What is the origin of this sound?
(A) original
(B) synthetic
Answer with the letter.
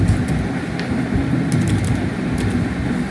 A